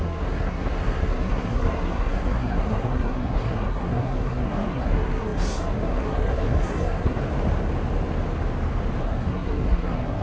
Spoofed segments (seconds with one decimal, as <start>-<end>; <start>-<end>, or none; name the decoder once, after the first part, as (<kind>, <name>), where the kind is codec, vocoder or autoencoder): 0.0-7.2 (codec, SNAC); 9.0-10.2